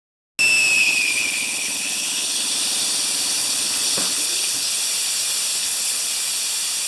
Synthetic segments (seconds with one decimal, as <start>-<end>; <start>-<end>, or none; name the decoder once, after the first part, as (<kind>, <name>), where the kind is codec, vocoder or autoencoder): 0.8-2.5 (codec, HILCodec); 3.4-4.8; 5.5-6.1